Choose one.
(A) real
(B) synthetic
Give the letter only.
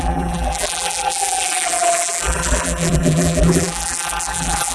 B